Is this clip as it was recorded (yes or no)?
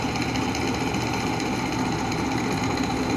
yes